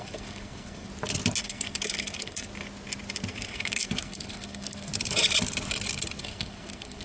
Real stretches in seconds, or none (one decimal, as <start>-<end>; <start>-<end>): 0.9-1.4; 2.5-3.3; 4.9-6.2